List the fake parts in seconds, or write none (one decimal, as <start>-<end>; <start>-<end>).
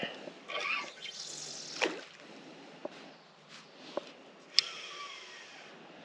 none